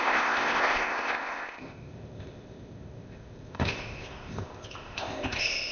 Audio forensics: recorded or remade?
remade